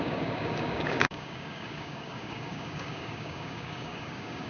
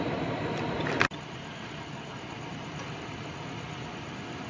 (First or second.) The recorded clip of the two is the second